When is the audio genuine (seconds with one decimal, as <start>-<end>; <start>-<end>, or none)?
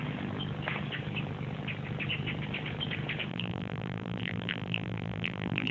0.0-3.3